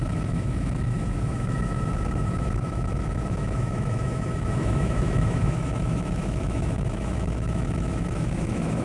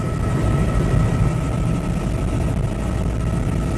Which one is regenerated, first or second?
first